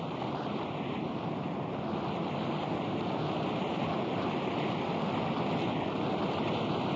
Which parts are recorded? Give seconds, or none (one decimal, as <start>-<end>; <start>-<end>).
0.0-7.0